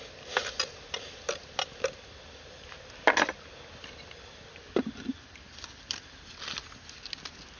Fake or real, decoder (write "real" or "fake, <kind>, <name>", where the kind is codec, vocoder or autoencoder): real